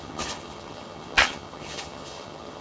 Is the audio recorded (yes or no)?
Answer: no